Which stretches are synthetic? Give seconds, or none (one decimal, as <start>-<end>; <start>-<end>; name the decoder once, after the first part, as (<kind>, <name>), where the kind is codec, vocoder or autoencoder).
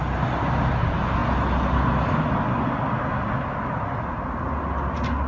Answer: none